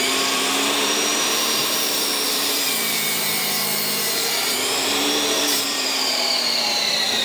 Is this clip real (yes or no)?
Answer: no